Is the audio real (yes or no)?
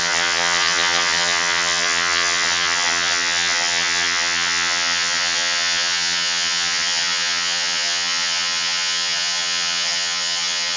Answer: no